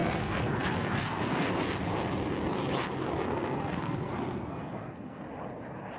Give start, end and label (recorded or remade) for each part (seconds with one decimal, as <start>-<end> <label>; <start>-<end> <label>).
0.0-1.5 remade; 1.5-3.3 recorded; 3.3-4.1 remade; 4.1-4.5 recorded; 4.5-5.2 remade; 5.2-6.0 recorded